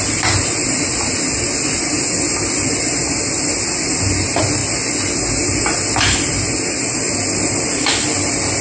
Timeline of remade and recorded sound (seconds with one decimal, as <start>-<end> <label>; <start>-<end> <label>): 0.0-8.6 recorded